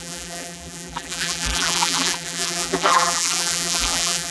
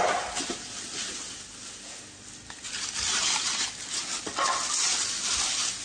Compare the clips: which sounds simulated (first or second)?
first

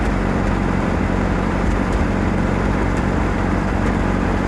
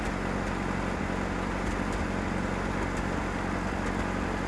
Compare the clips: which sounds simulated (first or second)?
first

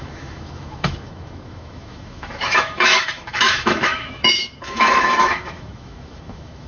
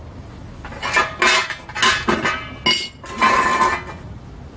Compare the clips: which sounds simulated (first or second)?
first